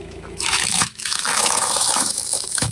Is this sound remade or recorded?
remade